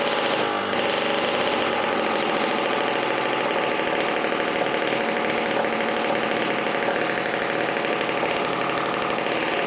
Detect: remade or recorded recorded